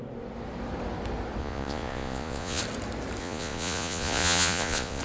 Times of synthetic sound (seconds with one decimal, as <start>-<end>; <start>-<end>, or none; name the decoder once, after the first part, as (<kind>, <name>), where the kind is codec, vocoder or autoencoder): 1.4-2.6 (vocoder, Vocos); 3.2-5.0